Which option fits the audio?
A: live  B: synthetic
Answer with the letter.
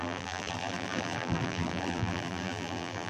B